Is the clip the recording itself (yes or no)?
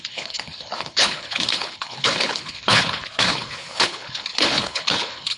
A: no